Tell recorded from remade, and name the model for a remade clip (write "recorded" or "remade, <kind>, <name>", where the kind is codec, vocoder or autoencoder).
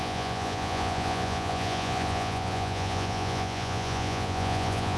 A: remade, vocoder, Vocos